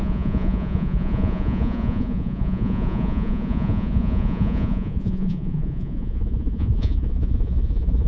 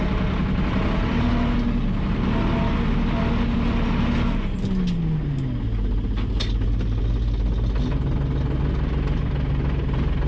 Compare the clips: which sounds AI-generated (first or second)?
first